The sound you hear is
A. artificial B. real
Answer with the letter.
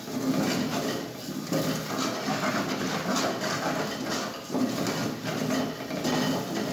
B